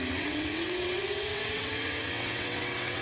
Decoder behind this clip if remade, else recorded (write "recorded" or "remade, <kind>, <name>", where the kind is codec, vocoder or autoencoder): remade, vocoder, WaveNeXt